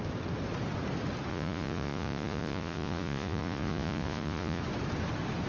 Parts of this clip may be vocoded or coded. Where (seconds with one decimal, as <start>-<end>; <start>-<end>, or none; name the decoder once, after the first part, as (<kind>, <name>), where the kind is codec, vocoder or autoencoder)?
1.3-4.6 (vocoder, Vocos)